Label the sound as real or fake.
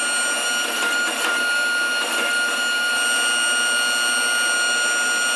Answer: real